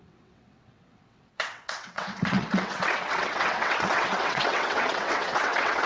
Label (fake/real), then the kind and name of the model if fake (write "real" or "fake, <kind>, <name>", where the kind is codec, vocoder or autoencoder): fake, vocoder, WaveNeXt